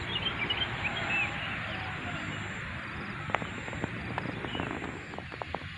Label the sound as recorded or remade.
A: recorded